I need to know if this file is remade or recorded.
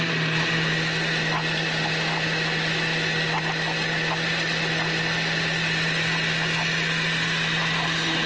recorded